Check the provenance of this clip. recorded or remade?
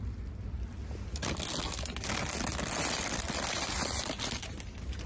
recorded